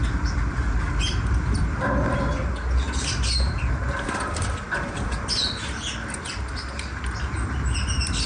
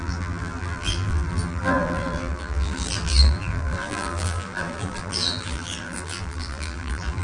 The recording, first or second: first